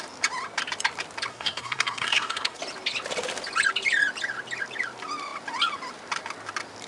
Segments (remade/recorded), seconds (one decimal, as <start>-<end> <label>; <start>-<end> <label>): 0.0-1.3 recorded; 1.3-2.6 remade; 2.6-6.9 recorded